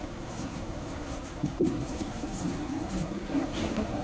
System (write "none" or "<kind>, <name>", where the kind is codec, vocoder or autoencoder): codec, SNAC